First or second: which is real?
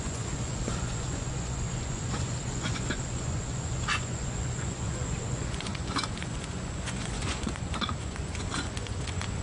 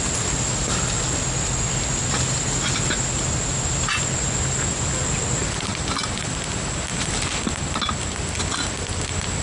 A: second